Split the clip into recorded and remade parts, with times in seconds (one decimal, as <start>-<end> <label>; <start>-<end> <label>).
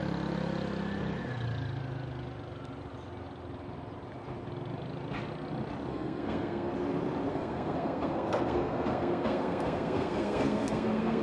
0.0-5.9 recorded; 5.9-6.7 remade; 6.7-7.3 recorded; 7.3-11.2 remade